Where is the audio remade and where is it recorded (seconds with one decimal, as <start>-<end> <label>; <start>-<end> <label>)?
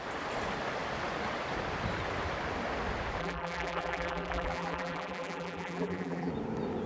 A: 0.0-3.2 recorded; 3.2-6.3 remade; 6.3-6.9 recorded